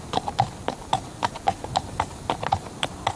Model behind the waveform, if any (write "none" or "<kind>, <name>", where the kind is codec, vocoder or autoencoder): none